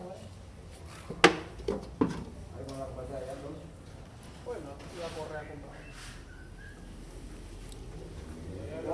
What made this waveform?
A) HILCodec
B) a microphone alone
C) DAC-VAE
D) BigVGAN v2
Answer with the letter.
B